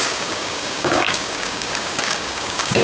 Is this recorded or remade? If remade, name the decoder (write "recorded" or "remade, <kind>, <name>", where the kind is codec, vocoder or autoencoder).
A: remade, codec, DAC